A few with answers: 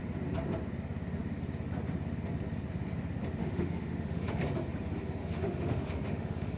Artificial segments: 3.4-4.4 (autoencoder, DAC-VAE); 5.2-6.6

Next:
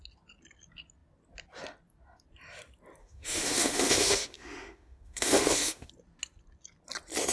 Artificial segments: 3.0-5.9 (autoencoder, DAC-VAE)

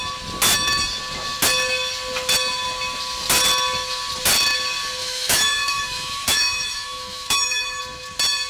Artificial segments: 5.0-7.8 (autoencoder, DAC-VAE)

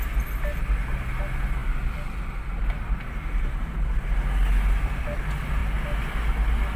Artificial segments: none

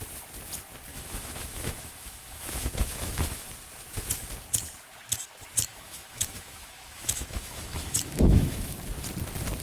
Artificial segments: 0.9-3.5 (autoencoder, DAC-VAE); 5.7-8.8